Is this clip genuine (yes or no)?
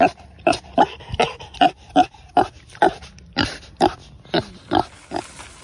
yes